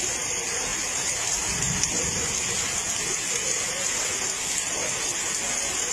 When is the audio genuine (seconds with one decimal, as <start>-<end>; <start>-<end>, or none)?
0.0-5.9